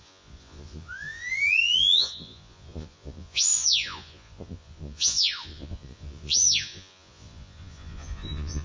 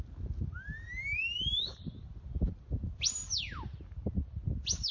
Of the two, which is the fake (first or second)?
first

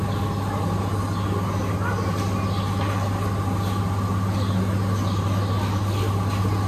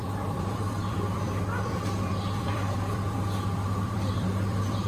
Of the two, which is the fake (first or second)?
second